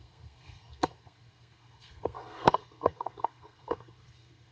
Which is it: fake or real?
fake